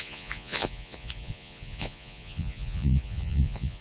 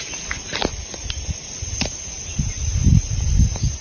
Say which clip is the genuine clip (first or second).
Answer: second